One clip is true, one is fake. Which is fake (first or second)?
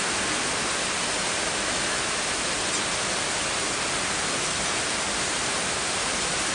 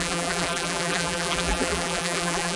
second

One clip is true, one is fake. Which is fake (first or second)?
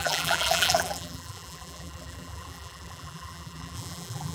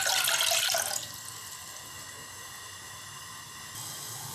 first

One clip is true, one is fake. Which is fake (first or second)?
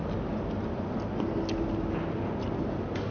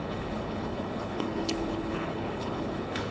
second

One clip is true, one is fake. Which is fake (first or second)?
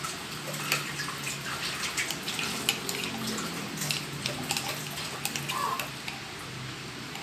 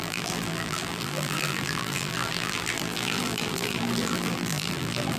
second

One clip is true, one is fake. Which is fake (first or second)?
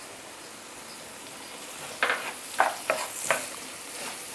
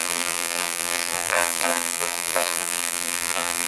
second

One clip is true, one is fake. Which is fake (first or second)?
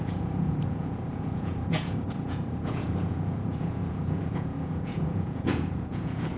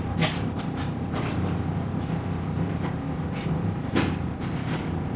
first